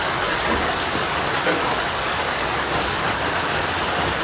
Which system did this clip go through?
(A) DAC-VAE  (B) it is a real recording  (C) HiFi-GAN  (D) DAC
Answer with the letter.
D